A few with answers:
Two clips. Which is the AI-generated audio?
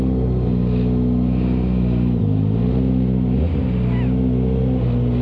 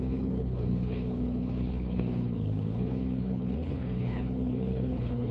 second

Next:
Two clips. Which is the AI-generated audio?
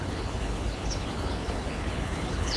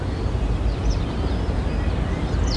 first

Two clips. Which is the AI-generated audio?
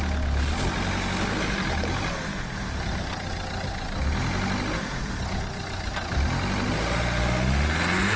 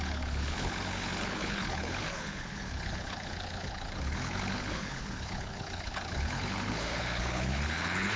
second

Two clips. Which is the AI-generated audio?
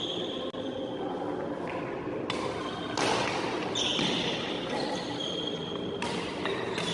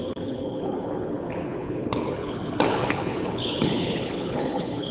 second